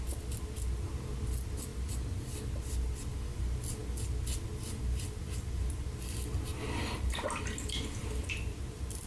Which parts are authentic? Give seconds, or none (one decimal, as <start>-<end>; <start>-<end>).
0.0-6.5; 7.4-8.0